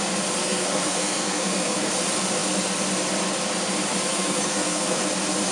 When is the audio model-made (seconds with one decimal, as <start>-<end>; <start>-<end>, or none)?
0.4-1.9; 4.1-5.0